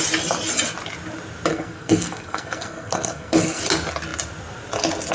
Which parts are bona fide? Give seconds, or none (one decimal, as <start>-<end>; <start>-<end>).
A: 0.0-1.5; 3.6-5.1

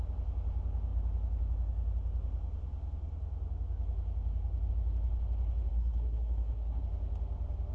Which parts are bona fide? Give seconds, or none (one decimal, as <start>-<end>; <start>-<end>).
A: 0.0-5.7; 6.8-7.7

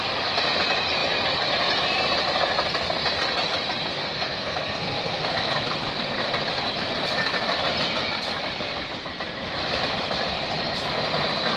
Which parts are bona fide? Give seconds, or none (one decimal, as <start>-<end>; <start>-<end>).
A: 0.0-4.0; 5.5-11.6

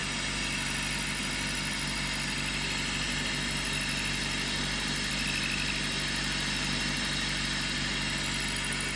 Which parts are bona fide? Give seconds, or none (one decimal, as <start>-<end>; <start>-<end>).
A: 0.0-9.0

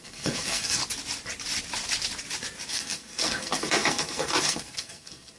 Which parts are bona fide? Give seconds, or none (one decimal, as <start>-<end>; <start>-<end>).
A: 0.8-2.7

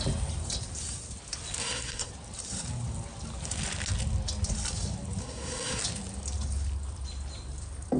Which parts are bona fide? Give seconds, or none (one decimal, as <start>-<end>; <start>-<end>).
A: 0.0-1.6; 2.1-5.2; 5.8-8.0

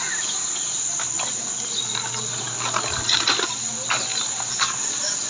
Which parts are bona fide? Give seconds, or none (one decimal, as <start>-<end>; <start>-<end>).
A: 0.0-5.3

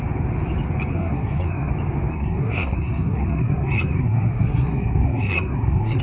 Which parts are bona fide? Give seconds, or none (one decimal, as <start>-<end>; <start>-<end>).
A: 0.0-0.9; 1.7-2.1